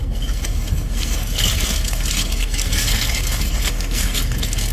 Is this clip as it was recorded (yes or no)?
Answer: no